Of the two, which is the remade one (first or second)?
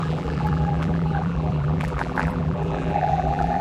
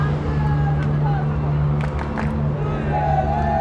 first